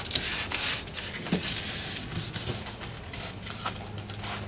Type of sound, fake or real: real